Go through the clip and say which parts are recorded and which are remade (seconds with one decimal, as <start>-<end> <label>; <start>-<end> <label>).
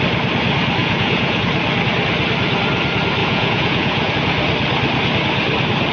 0.0-0.8 recorded; 0.8-1.4 remade; 1.4-3.2 recorded; 3.2-4.1 remade; 4.1-5.9 recorded